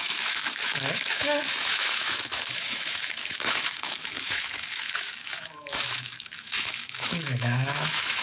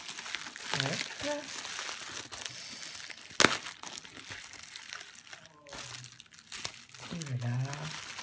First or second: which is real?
second